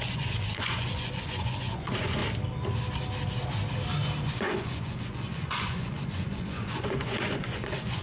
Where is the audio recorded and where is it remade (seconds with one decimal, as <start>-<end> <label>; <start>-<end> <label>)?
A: 0.0-2.2 remade; 2.2-4.2 recorded; 4.2-8.0 remade